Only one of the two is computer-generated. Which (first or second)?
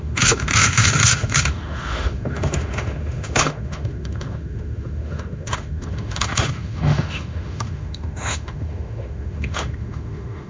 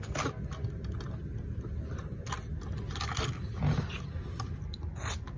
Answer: first